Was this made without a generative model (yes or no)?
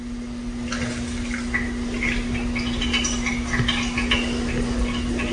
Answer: yes